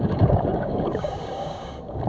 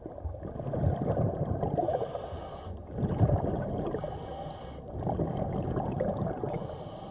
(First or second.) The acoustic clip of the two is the second